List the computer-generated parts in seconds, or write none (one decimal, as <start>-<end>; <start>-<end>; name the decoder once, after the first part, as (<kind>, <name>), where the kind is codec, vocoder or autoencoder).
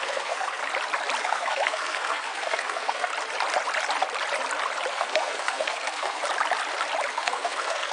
0.0-0.6 (codec, SNAC); 1.2-3.1; 4.9-6.2; 7.1-7.9